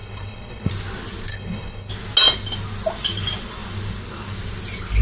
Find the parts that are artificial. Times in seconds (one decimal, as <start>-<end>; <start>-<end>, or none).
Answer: 0.0-0.7; 1.3-1.9